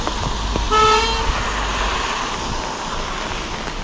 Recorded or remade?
recorded